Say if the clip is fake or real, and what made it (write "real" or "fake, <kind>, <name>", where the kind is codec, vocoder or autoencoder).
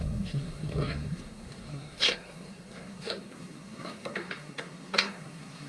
fake, codec, SNAC